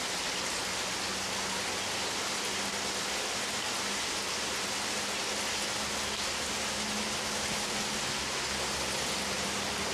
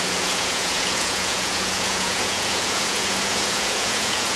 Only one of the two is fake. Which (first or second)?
second